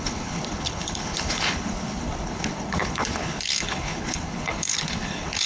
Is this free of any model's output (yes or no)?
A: no